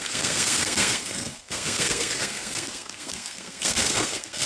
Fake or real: fake